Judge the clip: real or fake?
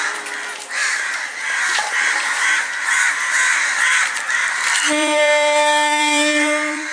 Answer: fake